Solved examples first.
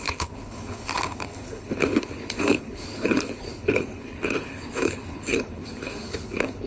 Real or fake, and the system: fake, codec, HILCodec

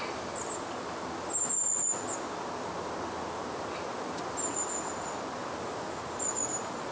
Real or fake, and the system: real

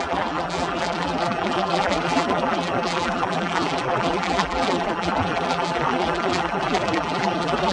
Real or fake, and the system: fake, vocoder, BigVGAN v2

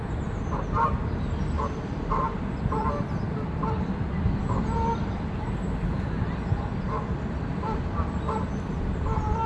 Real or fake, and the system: real